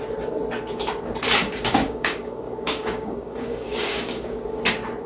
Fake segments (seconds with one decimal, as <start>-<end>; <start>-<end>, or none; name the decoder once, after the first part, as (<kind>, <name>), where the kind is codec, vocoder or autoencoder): 1.4-4.4 (codec, DAC)